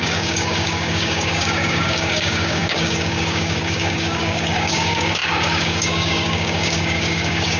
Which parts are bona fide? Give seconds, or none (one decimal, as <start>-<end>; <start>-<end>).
none